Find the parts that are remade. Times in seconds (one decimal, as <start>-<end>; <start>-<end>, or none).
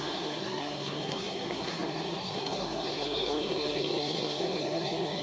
0.0-5.2